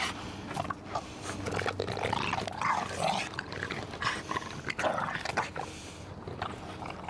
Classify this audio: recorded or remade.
recorded